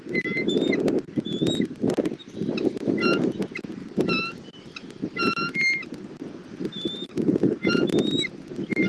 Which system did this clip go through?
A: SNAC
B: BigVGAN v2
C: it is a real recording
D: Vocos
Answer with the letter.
C